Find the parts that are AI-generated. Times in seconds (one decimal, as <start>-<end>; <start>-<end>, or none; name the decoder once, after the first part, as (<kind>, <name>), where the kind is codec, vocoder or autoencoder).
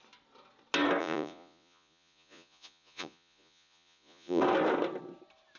1.0-4.4 (vocoder, Vocos)